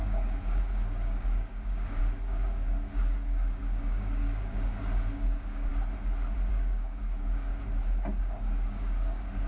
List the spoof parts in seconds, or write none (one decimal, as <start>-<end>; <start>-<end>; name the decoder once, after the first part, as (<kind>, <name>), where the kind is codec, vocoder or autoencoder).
0.0-5.7 (codec, DAC); 6.5-7.5; 8.2-9.5